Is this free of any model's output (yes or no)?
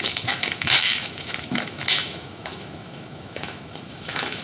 no